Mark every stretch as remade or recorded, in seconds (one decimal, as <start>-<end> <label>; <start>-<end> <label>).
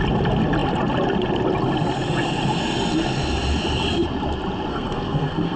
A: 0.0-4.7 recorded; 4.7-5.6 remade